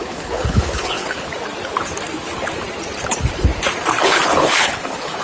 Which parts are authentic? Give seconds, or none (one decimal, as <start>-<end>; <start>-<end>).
1.3-3.1; 3.5-4.0